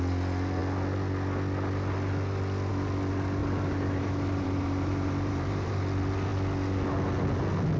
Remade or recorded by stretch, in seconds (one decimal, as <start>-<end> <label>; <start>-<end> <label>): 0.0-3.4 recorded; 3.4-5.7 remade; 5.7-7.8 recorded